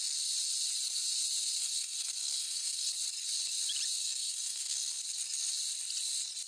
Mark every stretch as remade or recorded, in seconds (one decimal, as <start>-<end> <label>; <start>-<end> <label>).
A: 0.0-1.6 recorded; 1.6-2.9 remade; 2.9-4.0 recorded; 4.0-5.0 remade; 5.0-6.5 recorded